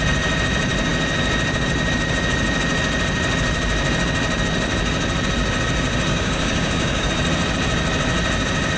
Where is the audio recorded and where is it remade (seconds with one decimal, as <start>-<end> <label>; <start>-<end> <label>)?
0.0-6.1 recorded; 6.1-7.1 remade; 7.1-8.8 recorded